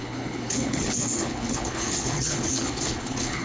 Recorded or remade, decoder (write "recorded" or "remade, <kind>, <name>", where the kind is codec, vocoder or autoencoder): remade, codec, HILCodec